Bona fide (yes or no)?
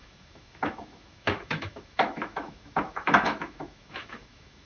no